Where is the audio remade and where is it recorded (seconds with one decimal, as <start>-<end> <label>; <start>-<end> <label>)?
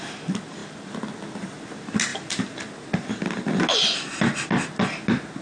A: 0.0-5.4 recorded